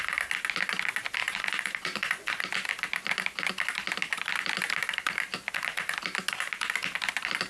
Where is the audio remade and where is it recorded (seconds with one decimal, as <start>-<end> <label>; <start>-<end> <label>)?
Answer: 0.0-1.2 recorded; 1.2-2.4 remade; 2.4-7.5 recorded